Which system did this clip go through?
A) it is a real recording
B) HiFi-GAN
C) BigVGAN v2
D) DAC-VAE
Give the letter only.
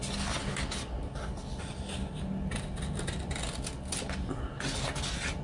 A